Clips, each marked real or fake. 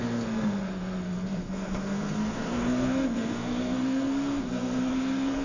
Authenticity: fake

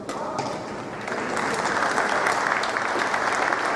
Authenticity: real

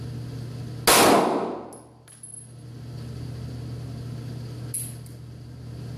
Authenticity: real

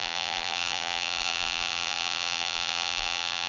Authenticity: fake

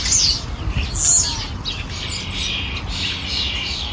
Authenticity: real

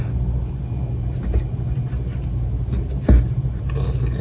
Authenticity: real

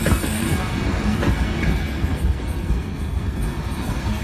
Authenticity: fake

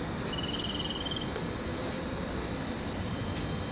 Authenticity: real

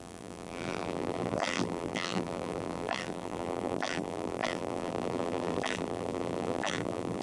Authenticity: fake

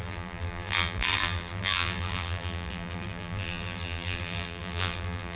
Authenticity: fake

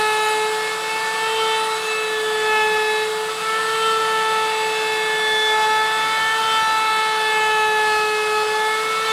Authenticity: real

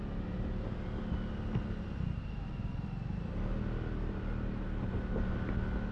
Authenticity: real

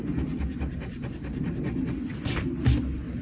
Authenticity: real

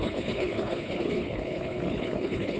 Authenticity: fake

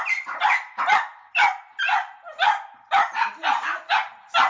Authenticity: real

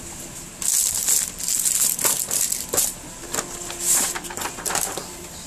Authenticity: real